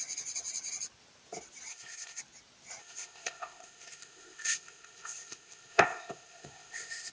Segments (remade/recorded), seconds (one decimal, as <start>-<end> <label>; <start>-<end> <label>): 0.0-1.7 recorded; 1.7-2.2 remade; 2.2-2.8 recorded; 2.8-7.1 remade